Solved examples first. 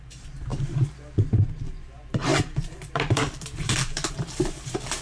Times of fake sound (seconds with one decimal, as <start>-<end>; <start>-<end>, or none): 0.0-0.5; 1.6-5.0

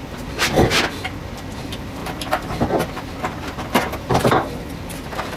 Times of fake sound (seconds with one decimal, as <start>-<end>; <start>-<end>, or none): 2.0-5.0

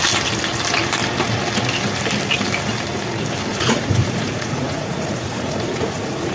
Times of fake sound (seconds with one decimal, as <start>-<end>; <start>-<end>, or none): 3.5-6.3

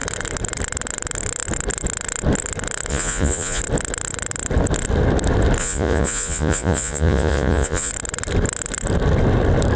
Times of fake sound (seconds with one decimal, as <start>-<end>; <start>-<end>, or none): 2.9-3.6; 5.6-7.9

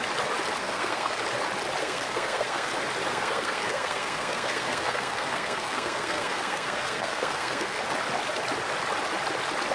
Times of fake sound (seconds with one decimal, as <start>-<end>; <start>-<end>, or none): 0.6-1.2; 1.8-2.7; 3.1-7.8

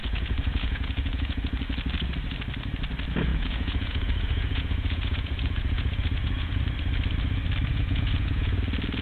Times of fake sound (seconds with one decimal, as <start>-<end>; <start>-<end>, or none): 0.0-1.4; 3.3-6.6; 7.7-8.6

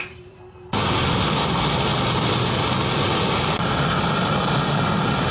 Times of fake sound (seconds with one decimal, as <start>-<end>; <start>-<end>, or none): none